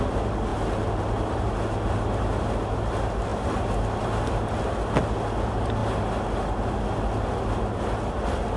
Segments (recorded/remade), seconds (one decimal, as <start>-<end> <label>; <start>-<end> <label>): 0.0-8.6 recorded